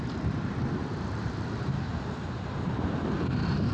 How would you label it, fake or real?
fake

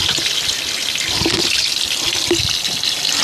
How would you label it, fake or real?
real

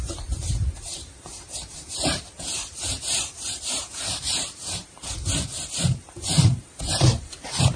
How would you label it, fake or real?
fake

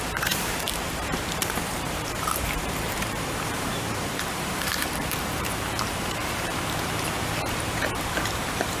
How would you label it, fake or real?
fake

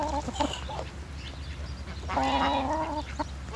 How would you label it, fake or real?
real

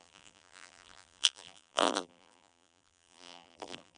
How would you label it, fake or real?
fake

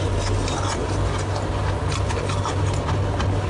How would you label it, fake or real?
real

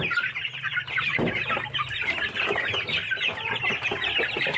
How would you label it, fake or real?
real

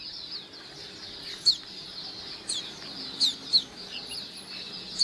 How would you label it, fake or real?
real